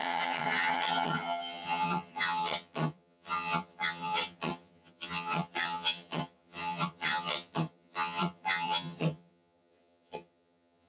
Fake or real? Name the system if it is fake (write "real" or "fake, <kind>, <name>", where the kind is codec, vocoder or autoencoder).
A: fake, vocoder, HiFi-GAN